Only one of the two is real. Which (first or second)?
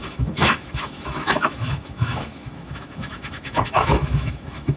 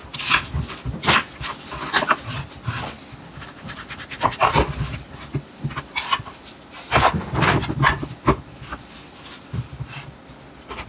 second